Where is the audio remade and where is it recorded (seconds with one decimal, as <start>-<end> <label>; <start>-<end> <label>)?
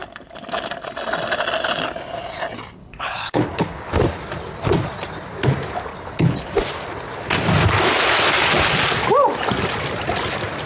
0.0-2.8 recorded; 2.8-3.9 remade; 3.9-5.9 recorded; 5.9-6.5 remade; 6.5-10.7 recorded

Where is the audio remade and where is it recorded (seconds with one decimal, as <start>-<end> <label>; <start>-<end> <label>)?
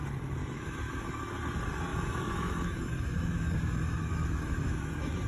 0.0-0.4 recorded; 0.4-1.3 remade; 1.3-1.9 recorded; 1.9-5.3 remade